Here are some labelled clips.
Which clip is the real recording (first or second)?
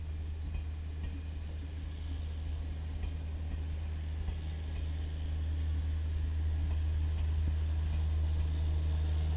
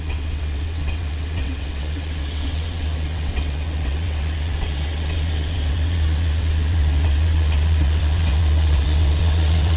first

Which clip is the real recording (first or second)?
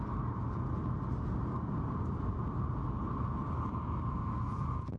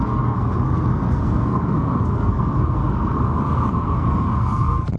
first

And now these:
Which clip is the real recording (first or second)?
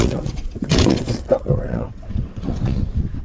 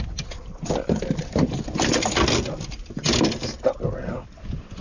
second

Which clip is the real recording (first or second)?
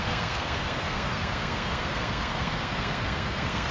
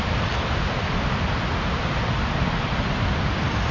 second